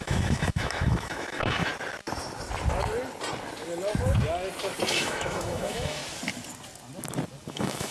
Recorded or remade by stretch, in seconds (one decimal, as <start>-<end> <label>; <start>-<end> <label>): 0.0-1.7 remade; 1.7-4.9 recorded; 4.9-6.0 remade; 6.0-7.5 recorded; 7.5-7.9 remade